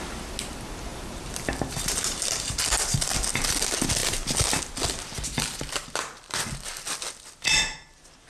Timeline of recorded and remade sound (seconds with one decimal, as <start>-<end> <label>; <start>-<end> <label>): 0.0-0.9 recorded; 0.9-2.6 remade; 2.6-8.3 recorded